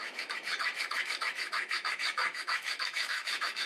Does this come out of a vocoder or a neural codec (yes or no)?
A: yes